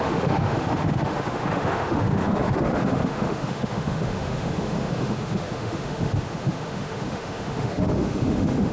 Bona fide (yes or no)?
no